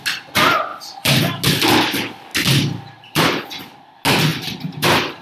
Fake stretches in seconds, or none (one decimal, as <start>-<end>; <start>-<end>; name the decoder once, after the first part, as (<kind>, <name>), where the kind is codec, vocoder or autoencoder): 0.7-1.2 (vocoder, BigVGAN v2); 4.3-5.2